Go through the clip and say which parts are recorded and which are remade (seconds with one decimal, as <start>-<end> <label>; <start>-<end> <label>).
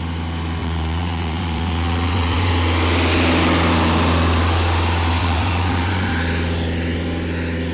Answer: 0.0-0.6 recorded; 0.6-2.5 remade; 2.5-5.2 recorded; 5.2-6.1 remade; 6.1-7.7 recorded